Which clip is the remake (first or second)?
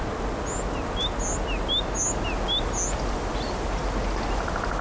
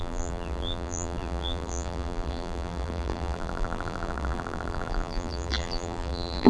second